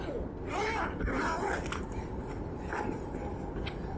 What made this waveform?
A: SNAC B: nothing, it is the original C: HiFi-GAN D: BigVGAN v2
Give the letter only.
B